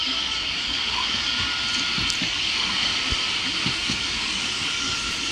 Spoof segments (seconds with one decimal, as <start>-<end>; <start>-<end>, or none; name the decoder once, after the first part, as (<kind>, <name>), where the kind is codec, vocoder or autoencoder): 0.0-1.5 (codec, DAC); 2.2-2.9; 3.7-5.3